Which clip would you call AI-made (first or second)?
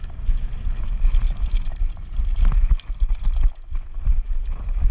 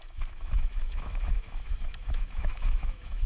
second